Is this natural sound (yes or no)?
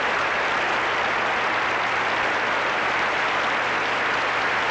yes